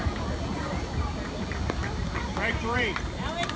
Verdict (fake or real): fake